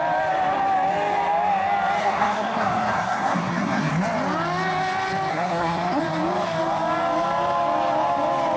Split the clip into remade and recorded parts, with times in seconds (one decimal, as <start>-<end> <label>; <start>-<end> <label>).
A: 0.0-2.0 recorded; 2.0-3.9 remade; 3.9-5.3 recorded; 5.3-6.0 remade; 6.0-8.6 recorded